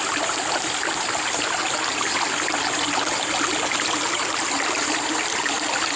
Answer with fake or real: real